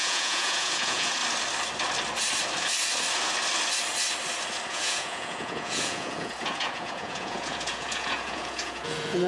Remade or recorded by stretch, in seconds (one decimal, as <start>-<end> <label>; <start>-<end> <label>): 0.0-1.2 remade; 1.2-4.7 recorded; 4.7-9.3 remade